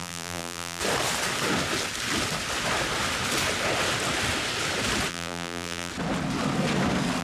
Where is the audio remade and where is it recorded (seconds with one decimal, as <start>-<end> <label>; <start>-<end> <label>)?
0.0-0.8 remade; 0.8-5.1 recorded; 5.1-5.9 remade; 5.9-7.2 recorded